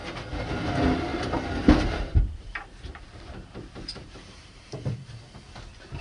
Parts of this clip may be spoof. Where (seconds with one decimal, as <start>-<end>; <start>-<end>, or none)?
1.1-4.7